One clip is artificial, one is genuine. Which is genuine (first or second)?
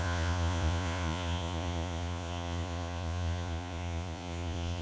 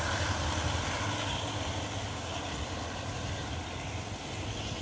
second